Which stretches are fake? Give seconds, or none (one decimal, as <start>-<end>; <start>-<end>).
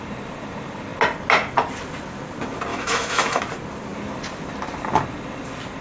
2.7-3.4